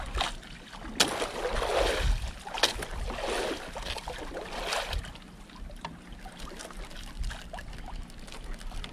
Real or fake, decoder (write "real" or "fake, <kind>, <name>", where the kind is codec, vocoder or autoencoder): real